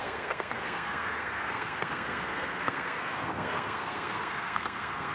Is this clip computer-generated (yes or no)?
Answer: yes